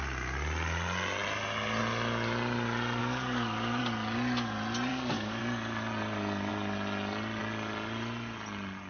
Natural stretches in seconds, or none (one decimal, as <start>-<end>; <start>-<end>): 0.0-3.0; 3.8-4.9; 5.4-8.9